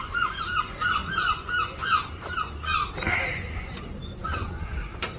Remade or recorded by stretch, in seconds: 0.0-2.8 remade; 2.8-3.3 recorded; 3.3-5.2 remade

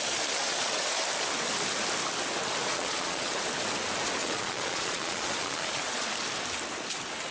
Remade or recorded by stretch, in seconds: 0.0-0.4 recorded; 0.4-1.0 remade; 1.0-2.7 recorded; 2.7-3.3 remade; 3.3-4.2 recorded; 4.2-6.1 remade; 6.1-7.3 recorded

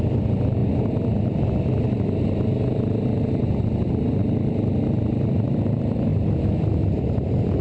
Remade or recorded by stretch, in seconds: 0.0-7.6 recorded

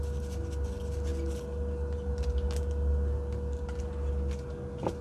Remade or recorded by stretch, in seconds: 0.0-5.0 recorded

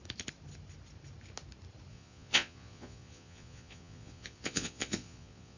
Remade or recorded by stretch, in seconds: 0.0-1.9 recorded; 1.9-5.6 remade